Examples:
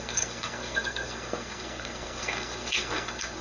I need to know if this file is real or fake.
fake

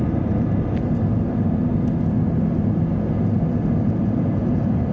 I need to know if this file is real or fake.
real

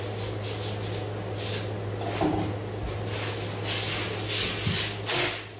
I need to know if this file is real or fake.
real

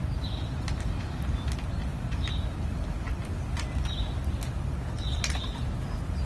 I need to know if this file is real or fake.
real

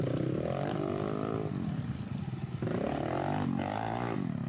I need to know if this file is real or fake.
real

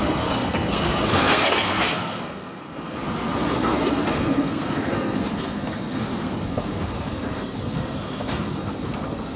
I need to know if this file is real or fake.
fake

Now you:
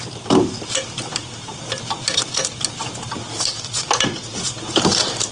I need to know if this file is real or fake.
real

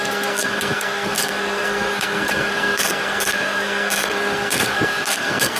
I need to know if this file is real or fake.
fake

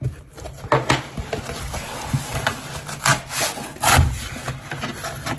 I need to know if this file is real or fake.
real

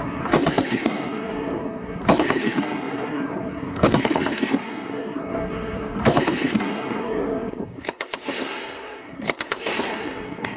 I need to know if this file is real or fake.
fake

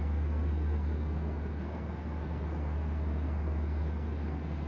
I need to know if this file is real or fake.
fake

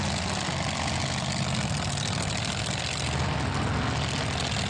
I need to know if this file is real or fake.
real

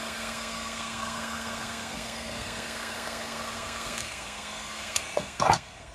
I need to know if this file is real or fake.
fake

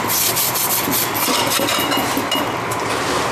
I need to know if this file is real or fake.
real